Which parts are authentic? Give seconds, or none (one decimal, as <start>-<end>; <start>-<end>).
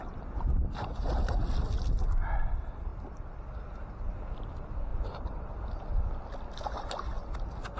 0.0-4.9; 5.5-7.8